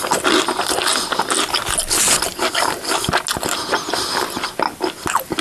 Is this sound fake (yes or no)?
no